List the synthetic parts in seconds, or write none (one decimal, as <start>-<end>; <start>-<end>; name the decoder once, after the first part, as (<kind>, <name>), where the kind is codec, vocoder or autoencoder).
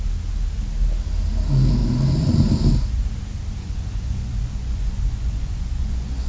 3.6-6.3 (vocoder, Vocos)